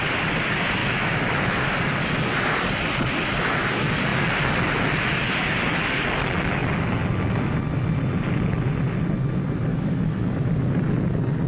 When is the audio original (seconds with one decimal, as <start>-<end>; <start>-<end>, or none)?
0.0-0.8; 1.6-9.7; 10.5-11.5